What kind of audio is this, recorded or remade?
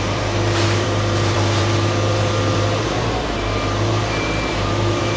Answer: remade